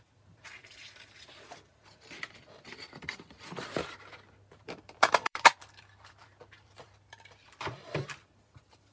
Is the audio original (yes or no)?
no